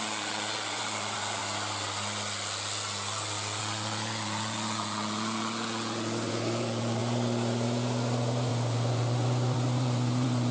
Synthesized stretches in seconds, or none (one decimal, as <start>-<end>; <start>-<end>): 0.0-1.4; 3.6-7.0; 8.5-10.5